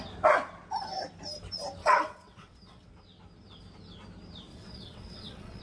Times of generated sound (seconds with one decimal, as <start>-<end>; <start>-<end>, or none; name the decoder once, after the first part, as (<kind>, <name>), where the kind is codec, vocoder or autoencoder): 1.8-2.9 (vocoder, WaveNeXt); 4.5-5.6